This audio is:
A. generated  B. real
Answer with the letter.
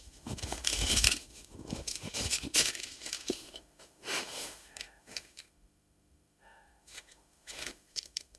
A